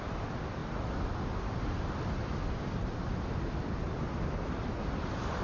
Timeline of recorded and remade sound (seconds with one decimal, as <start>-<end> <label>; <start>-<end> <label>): 0.0-5.4 recorded